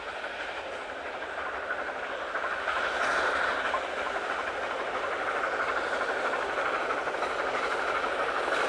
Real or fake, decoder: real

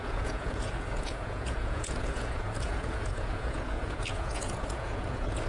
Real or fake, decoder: fake, vocoder, Vocos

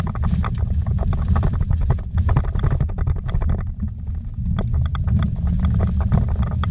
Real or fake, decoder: real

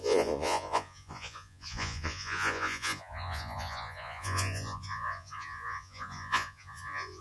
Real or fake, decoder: fake, vocoder, Vocos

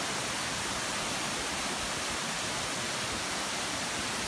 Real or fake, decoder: real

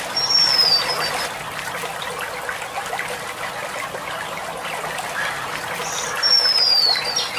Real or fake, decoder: real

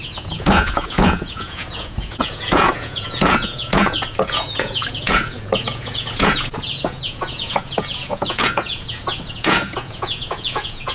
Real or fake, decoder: fake, vocoder, Vocos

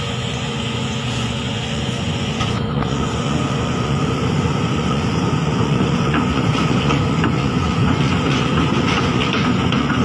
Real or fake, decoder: fake, vocoder, Vocos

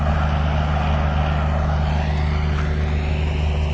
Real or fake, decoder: real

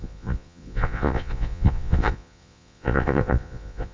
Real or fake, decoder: fake, vocoder, Vocos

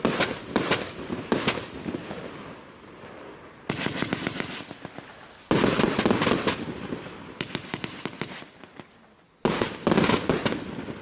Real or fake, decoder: real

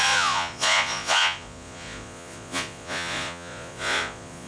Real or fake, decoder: fake, vocoder, Vocos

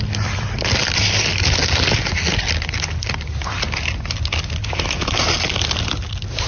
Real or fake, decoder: real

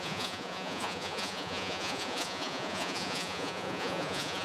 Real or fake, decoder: fake, vocoder, Vocos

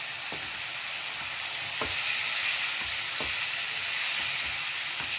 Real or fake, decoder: real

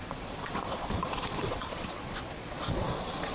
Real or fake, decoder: fake, vocoder, Vocos